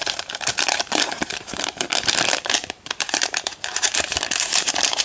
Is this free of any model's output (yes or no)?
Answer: no